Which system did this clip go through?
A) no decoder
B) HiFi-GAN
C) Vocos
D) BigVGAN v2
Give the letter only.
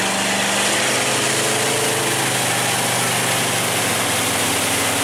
A